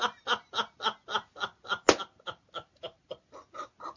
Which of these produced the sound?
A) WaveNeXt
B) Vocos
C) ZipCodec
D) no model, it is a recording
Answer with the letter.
D